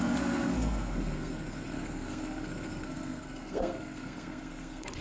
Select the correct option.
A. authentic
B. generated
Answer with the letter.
B